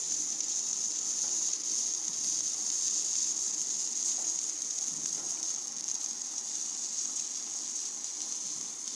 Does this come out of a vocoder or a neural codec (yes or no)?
no